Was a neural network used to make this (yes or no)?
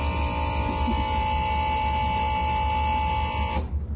no